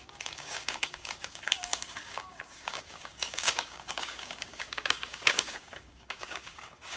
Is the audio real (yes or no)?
no